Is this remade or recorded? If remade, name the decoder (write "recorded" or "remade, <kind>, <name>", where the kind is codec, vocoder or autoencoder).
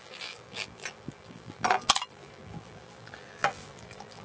remade, vocoder, BigVGAN v2